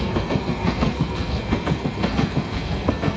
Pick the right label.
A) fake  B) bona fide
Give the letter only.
A